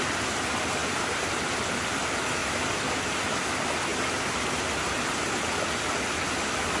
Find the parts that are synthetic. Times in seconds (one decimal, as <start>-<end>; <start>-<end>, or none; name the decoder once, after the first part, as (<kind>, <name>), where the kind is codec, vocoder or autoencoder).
0.8-1.5 (vocoder, BigVGAN v2); 2.4-3.0